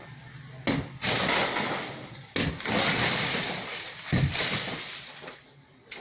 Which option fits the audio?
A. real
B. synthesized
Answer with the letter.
A